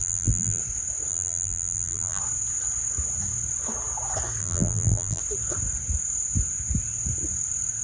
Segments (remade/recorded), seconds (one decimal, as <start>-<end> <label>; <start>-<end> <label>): 0.0-0.6 remade; 0.6-1.1 recorded; 1.1-2.2 remade; 2.2-4.4 recorded; 4.4-5.2 remade; 5.2-7.8 recorded